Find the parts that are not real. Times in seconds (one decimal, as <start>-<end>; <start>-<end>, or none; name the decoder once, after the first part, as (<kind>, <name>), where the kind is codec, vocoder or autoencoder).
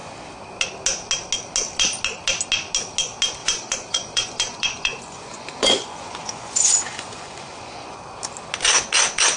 3.4-8.0 (vocoder, Vocos)